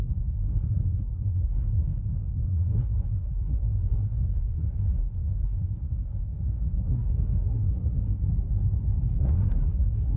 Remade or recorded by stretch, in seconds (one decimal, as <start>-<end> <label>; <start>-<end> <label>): 0.0-8.3 remade; 8.3-9.2 recorded; 9.2-10.2 remade